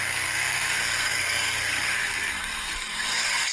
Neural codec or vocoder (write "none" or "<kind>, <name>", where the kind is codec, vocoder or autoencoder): codec, SNAC